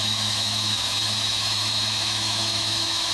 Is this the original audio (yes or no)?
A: no